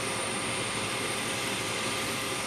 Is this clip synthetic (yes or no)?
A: no